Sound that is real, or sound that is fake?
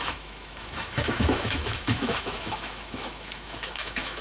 fake